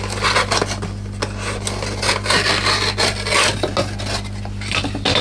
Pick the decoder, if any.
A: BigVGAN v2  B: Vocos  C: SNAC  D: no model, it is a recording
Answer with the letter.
D